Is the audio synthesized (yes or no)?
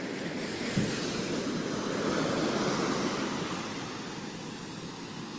no